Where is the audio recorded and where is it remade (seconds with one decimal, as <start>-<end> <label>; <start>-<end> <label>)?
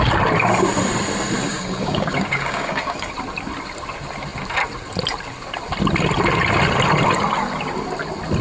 0.0-1.5 recorded; 1.5-3.1 remade; 3.1-8.4 recorded